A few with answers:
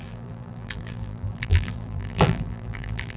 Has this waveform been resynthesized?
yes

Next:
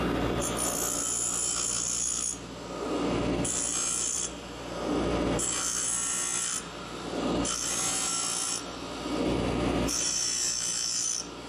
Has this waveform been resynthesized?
no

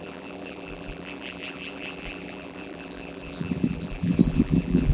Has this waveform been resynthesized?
yes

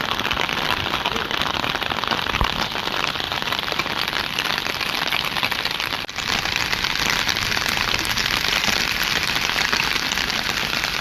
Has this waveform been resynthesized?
yes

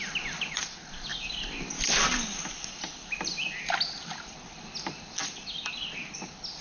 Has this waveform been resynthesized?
no